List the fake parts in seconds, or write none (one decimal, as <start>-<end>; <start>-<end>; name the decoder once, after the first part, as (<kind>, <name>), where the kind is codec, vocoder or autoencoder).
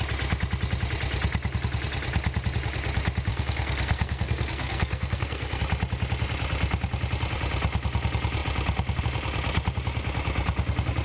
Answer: 3.3-5.6 (codec, SNAC)